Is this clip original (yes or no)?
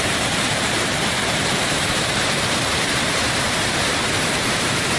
no